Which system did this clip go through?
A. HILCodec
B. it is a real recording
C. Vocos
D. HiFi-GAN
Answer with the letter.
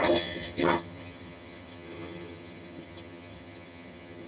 D